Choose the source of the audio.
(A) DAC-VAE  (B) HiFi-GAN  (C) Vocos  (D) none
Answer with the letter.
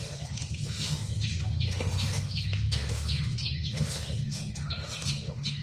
A